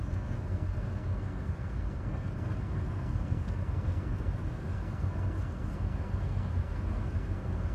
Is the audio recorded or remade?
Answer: remade